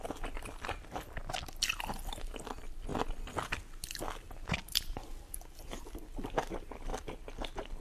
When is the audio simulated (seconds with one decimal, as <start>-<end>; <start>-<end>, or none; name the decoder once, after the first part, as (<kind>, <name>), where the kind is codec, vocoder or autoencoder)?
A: none